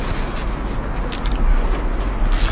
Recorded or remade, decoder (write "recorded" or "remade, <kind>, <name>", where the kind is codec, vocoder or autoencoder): recorded